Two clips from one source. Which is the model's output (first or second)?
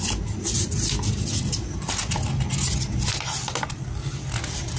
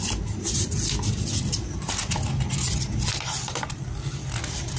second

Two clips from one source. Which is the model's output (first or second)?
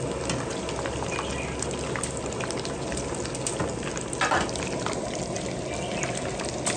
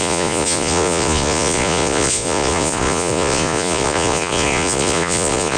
second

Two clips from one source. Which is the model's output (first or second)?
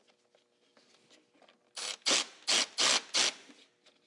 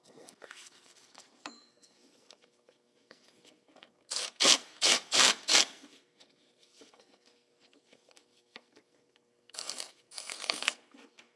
second